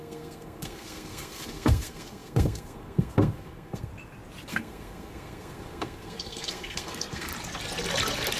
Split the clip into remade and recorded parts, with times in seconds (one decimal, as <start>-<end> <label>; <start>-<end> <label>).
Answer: 0.0-3.9 remade; 3.9-4.5 recorded; 4.5-7.3 remade; 7.3-8.4 recorded